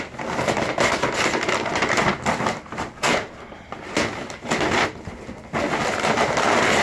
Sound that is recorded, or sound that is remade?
recorded